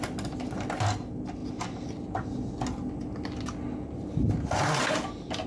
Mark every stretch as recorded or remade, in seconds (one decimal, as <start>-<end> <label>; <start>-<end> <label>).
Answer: 0.0-5.5 recorded